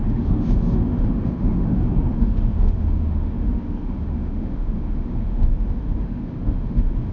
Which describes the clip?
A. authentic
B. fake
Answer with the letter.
B